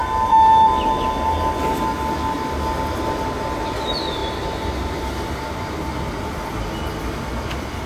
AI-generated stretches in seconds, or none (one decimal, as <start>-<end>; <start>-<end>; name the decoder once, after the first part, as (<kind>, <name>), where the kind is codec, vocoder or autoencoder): none